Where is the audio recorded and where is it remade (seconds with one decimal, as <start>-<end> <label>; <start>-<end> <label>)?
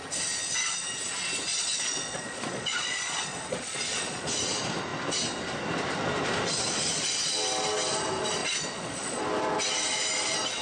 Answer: 0.0-1.5 recorded; 1.5-4.3 remade; 4.3-8.4 recorded; 8.4-9.2 remade; 9.2-10.6 recorded